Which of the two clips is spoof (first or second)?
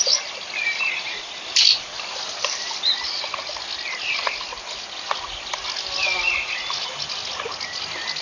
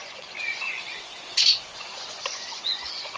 second